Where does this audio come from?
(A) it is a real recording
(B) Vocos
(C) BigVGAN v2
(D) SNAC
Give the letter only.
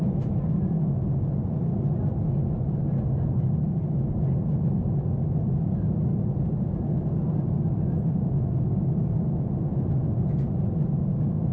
A